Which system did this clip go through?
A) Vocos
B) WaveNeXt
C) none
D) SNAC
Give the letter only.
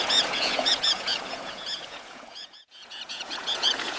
A